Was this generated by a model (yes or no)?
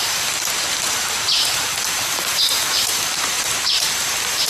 yes